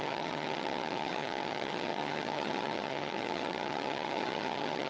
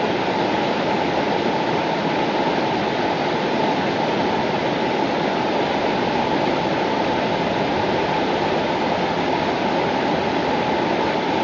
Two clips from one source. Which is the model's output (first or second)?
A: first